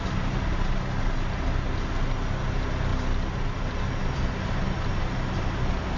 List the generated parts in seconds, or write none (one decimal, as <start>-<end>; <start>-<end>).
none